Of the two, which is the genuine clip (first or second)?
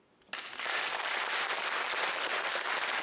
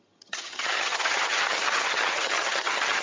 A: first